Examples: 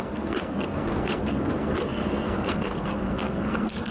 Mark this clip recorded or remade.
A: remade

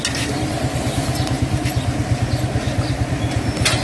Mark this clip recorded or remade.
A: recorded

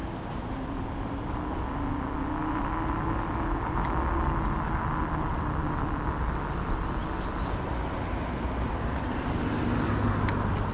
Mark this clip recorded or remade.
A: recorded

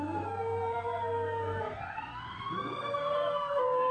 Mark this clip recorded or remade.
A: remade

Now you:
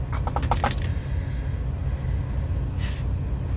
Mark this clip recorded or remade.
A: recorded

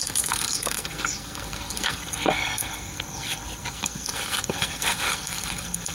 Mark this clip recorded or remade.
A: remade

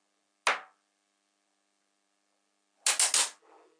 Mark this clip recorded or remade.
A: recorded